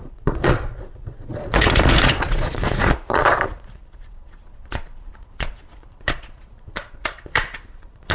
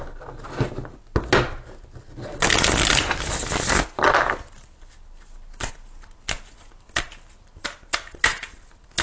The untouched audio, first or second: second